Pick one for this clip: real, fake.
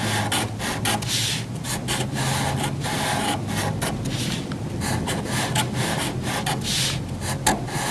real